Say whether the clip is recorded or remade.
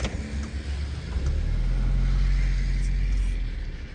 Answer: recorded